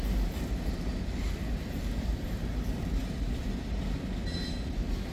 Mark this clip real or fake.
real